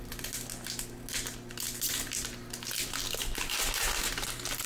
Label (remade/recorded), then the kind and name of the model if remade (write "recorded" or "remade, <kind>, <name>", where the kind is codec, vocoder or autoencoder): recorded